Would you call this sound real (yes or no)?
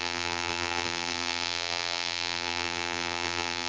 no